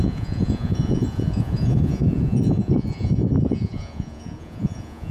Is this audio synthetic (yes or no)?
yes